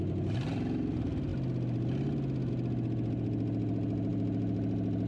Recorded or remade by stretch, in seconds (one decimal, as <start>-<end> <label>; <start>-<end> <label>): 0.0-5.1 recorded